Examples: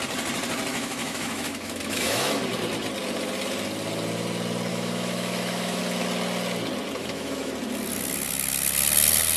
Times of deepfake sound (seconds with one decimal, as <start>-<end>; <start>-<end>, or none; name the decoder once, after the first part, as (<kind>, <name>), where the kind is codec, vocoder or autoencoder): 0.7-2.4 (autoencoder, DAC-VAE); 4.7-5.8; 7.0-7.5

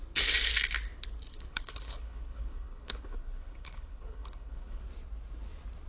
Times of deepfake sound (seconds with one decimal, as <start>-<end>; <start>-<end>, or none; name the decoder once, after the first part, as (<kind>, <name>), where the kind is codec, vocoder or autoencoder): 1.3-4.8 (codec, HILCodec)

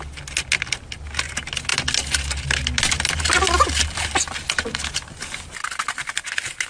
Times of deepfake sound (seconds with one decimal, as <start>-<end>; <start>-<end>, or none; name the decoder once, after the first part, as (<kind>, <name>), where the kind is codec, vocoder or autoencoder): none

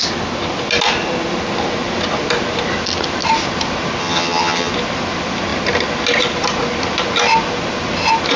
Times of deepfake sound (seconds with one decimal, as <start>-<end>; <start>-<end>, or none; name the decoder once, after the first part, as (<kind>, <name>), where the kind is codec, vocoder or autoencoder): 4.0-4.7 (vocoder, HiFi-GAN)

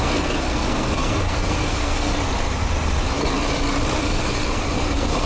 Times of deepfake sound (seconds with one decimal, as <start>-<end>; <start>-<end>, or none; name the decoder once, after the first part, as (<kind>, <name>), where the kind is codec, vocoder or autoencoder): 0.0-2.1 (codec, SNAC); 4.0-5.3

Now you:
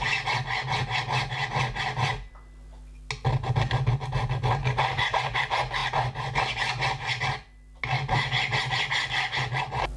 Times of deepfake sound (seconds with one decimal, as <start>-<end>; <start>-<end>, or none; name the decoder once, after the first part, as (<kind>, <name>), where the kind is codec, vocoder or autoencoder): none

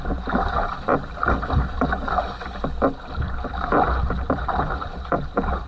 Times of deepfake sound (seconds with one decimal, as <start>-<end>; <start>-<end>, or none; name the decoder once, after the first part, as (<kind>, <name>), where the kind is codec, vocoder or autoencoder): 0.0-0.9 (vocoder, BigVGAN v2); 4.3-5.7